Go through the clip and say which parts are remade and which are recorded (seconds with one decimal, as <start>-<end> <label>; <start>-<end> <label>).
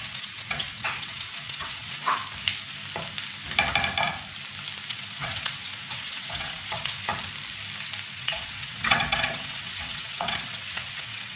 0.0-2.2 remade; 2.2-4.9 recorded; 4.9-7.1 remade; 7.1-8.1 recorded; 8.1-11.4 remade